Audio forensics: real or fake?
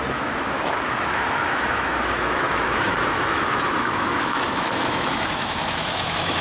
fake